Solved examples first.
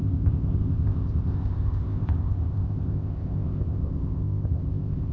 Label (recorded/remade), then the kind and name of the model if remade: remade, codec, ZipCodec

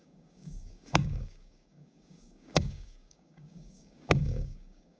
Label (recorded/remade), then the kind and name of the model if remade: remade, codec, DAC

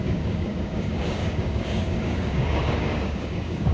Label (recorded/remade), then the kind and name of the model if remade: remade, codec, DAC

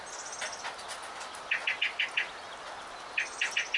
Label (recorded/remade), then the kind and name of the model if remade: recorded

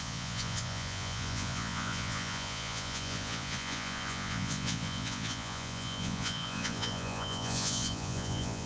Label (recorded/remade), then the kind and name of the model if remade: remade, vocoder, Vocos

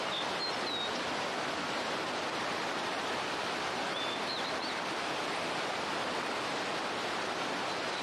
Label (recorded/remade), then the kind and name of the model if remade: recorded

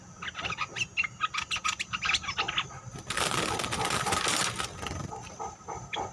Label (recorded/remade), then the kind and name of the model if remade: recorded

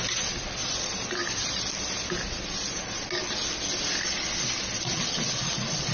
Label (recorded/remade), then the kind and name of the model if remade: recorded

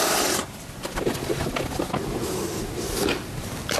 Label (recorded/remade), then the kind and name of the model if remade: recorded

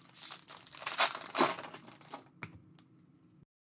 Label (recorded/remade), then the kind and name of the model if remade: recorded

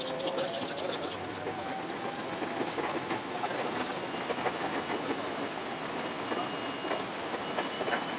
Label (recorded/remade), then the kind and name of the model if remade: recorded